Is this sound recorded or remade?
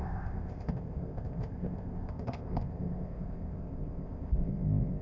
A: remade